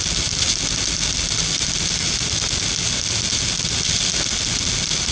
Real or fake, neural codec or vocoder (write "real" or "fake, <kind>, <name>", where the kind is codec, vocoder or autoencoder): real